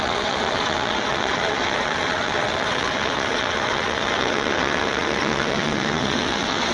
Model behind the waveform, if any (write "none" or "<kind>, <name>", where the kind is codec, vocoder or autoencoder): vocoder, WaveNeXt